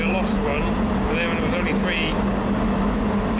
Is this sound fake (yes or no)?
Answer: no